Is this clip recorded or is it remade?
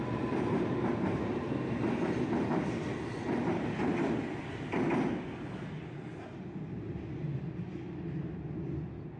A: recorded